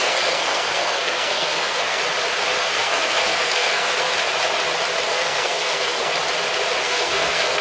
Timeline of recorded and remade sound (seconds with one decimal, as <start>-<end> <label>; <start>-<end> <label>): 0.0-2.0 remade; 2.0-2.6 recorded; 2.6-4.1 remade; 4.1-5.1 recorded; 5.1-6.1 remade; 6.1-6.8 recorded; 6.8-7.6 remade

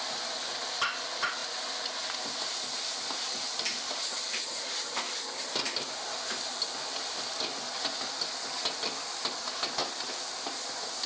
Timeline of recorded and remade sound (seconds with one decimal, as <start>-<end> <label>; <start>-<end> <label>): 0.0-11.1 recorded

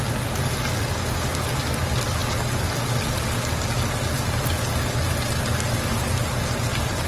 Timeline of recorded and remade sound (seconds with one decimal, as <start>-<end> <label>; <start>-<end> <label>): 0.0-7.1 recorded

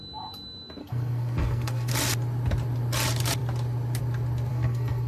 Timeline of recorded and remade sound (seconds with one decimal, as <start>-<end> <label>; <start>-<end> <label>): 0.0-0.8 recorded; 0.8-1.9 remade; 1.9-4.5 recorded; 4.5-5.1 remade

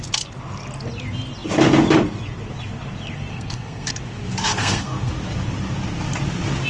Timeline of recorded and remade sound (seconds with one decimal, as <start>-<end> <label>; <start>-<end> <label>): 0.0-3.3 recorded; 3.3-3.9 remade; 3.9-4.6 recorded; 4.6-5.1 remade; 5.1-6.7 recorded